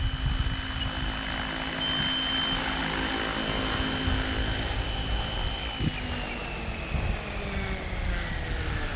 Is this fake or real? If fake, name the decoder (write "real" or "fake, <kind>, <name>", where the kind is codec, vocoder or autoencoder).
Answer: real